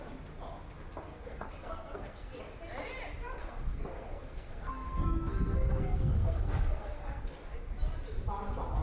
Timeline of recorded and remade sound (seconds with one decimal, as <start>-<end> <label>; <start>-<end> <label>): 0.0-1.1 recorded; 1.1-2.4 remade; 2.4-3.4 recorded; 3.4-7.3 remade; 7.3-8.8 recorded